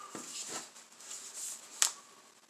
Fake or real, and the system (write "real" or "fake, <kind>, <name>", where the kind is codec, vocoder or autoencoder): real